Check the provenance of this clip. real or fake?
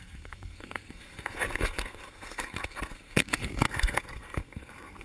fake